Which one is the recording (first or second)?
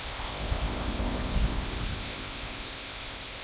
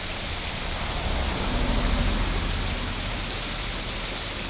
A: second